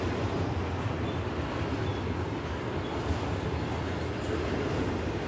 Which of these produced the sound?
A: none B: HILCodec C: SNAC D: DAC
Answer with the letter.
A